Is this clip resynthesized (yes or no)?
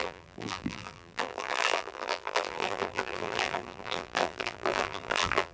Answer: yes